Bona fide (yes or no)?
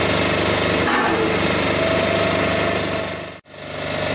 yes